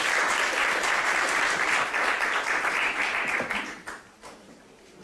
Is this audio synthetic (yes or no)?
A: no